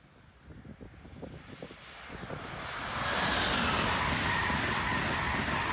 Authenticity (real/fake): real